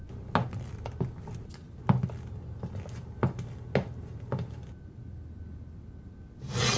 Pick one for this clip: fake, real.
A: real